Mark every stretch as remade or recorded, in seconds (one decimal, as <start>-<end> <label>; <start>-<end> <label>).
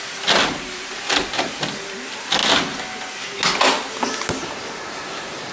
0.0-2.4 remade; 2.4-4.9 recorded; 4.9-5.5 remade